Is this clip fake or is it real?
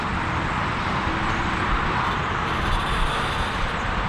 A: fake